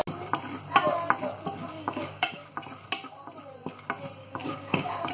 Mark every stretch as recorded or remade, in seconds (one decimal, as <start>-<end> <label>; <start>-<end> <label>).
0.0-1.7 recorded; 1.7-2.5 remade; 2.5-4.2 recorded; 4.2-5.1 remade